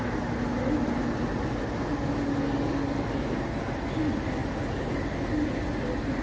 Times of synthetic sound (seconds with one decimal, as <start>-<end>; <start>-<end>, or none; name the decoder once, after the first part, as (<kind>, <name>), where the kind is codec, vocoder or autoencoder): none